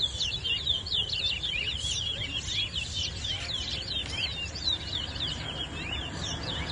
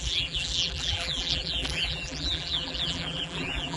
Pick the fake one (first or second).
second